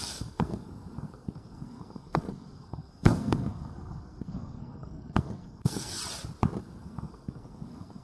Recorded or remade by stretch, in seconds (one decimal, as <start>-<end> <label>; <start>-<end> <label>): 0.0-6.0 remade; 6.0-6.6 recorded; 6.6-8.0 remade